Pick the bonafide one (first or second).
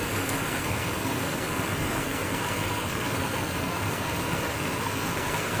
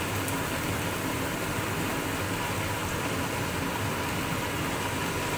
second